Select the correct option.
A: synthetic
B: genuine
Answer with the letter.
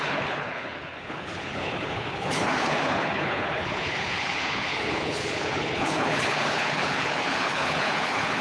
A